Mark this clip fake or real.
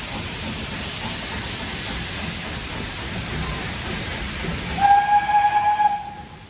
real